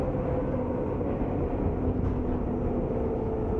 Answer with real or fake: real